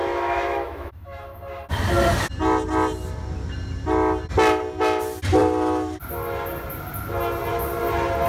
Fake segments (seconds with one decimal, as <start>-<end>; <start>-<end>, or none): 0.0-1.4